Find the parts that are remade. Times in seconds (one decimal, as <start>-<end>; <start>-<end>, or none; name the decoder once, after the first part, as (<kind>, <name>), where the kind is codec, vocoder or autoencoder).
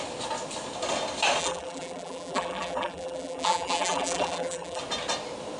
1.4-4.8 (vocoder, BigVGAN v2)